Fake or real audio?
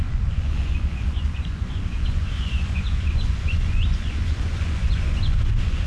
fake